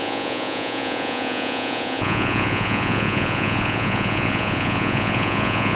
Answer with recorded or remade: remade